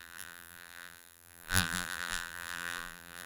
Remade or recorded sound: remade